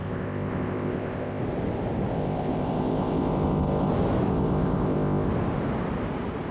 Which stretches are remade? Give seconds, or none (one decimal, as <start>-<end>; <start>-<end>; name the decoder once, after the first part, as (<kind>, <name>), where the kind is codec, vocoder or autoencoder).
0.0-1.4 (codec, ZipCodec); 2.1-3.9; 4.3-5.3